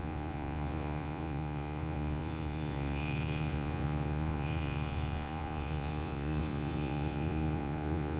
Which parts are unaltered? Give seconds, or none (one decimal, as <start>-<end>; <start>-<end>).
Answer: none